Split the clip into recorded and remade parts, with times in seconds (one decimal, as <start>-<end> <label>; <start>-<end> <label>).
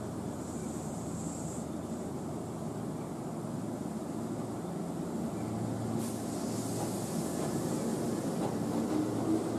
0.0-0.6 recorded; 0.6-2.5 remade; 2.5-9.6 recorded